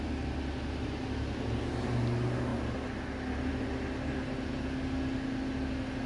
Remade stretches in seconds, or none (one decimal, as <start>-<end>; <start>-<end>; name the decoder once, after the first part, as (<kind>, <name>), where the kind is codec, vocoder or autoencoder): none

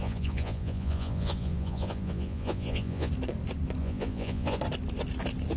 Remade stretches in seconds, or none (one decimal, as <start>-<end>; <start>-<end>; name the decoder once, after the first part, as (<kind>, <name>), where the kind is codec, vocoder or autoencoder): 0.0-3.1 (vocoder, Vocos); 3.8-4.6